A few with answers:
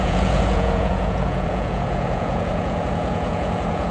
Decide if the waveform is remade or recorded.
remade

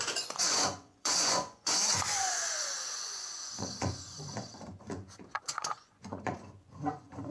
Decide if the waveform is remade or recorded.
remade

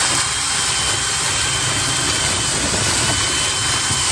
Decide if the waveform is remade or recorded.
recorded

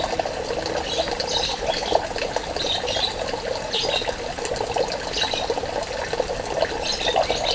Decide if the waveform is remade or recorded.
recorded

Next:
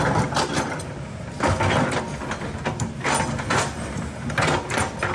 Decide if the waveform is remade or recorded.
recorded